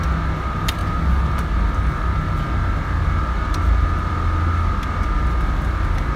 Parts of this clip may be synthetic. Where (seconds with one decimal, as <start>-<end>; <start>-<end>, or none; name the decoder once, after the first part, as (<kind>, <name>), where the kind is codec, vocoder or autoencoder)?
none